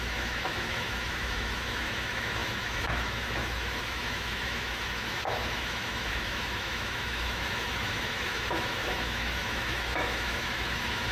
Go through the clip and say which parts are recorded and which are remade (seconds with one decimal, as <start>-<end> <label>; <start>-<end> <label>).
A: 0.0-11.1 remade